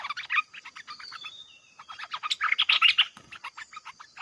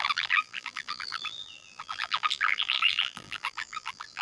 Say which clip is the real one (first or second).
first